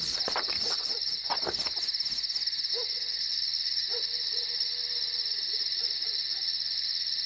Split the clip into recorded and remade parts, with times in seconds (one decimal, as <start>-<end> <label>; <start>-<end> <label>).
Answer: 0.0-0.4 recorded; 0.4-1.3 remade; 1.3-2.7 recorded; 2.7-7.3 remade